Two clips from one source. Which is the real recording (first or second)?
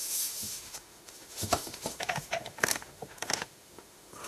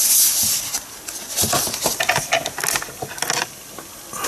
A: second